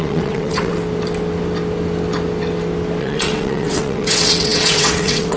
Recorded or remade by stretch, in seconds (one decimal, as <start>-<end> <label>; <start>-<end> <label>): 0.0-0.7 remade; 0.7-3.0 recorded; 3.0-5.4 remade